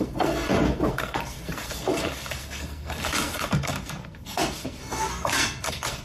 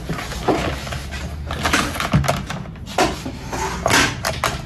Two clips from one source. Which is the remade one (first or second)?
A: first